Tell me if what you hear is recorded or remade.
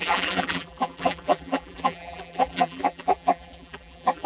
remade